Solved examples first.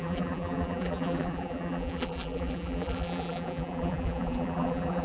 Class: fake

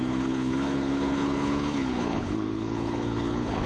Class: fake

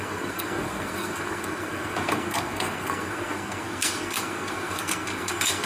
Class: fake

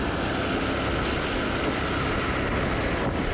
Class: real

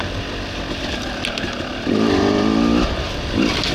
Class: real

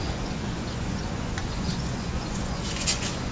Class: fake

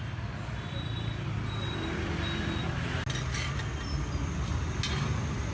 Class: real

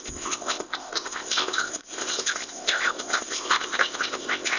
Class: fake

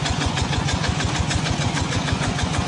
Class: fake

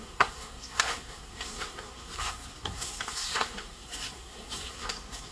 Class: fake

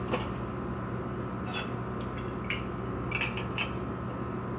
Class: real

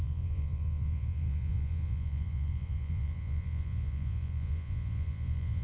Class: fake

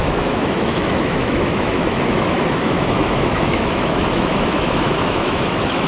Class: fake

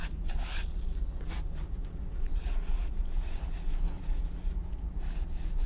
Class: fake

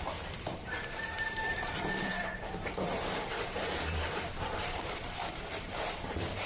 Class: fake